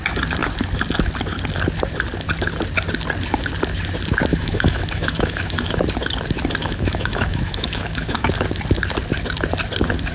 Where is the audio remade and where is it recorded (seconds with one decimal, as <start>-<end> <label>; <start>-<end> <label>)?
0.0-4.3 recorded; 4.3-5.8 remade; 5.8-6.6 recorded; 6.6-8.3 remade; 8.3-10.1 recorded